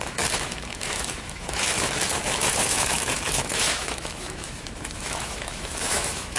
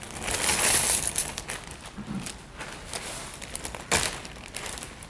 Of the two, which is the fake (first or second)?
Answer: first